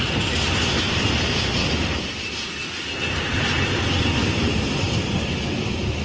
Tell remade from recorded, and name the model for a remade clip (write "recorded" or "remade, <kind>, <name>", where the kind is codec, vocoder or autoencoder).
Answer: recorded